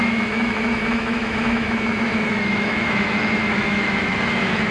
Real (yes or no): no